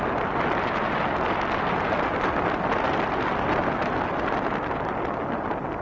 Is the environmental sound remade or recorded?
recorded